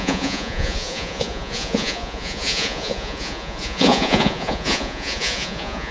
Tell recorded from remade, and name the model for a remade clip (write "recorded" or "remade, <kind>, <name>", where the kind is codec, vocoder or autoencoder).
remade, vocoder, Vocos